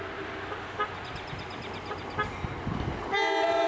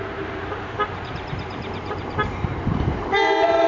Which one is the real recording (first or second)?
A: first